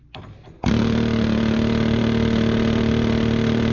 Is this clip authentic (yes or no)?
yes